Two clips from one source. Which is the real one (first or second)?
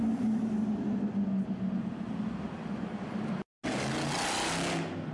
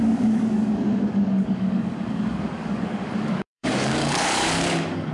first